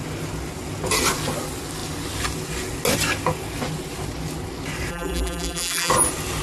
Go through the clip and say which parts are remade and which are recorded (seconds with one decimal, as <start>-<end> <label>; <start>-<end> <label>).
0.0-4.9 recorded; 4.9-5.9 remade; 5.9-6.4 recorded